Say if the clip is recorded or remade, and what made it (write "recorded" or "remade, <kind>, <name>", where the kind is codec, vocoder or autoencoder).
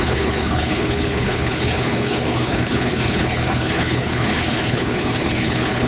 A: remade, codec, HILCodec